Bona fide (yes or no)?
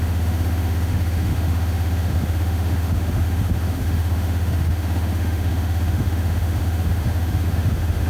no